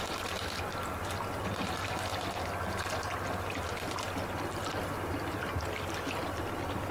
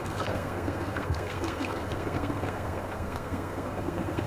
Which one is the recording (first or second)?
first